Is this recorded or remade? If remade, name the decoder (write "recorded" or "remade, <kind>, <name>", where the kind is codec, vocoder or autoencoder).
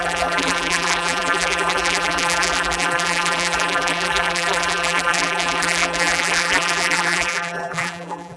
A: remade, vocoder, BigVGAN v2